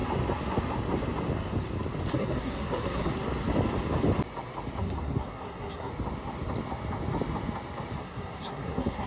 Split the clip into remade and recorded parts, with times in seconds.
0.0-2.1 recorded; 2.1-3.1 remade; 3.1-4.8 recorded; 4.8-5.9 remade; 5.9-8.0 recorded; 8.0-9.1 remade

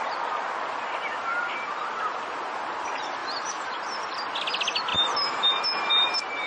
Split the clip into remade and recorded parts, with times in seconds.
0.0-6.5 recorded

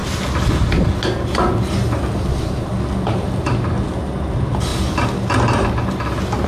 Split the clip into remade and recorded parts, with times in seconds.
0.0-6.5 recorded